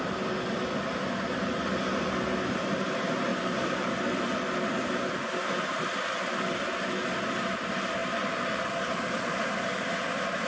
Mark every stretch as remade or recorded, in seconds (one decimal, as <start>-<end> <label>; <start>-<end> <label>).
0.0-3.3 recorded; 3.3-3.9 remade; 3.9-8.0 recorded; 8.0-9.4 remade; 9.4-10.5 recorded